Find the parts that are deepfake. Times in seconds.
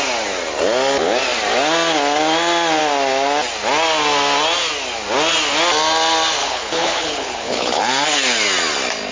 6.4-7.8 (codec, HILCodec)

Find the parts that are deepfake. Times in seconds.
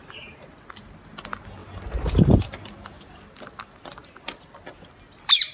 none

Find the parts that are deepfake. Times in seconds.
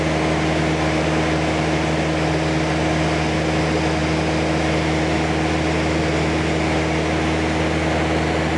none